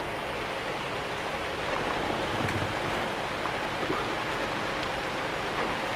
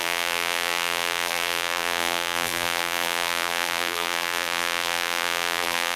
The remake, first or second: second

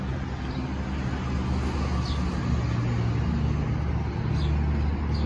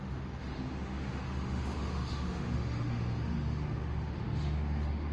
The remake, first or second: second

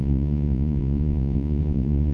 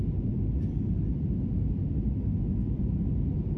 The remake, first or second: first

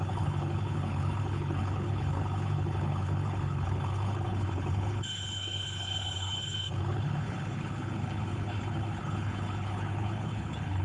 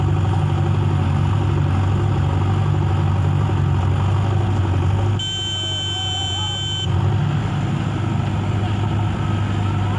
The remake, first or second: first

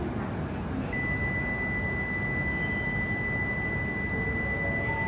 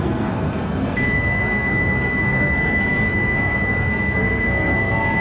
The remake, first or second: second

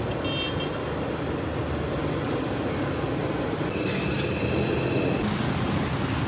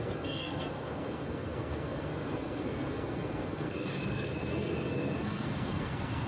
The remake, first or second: second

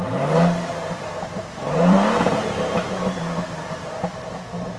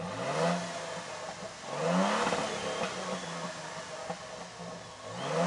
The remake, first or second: first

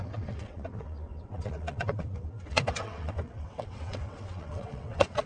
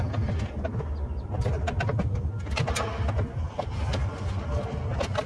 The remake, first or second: first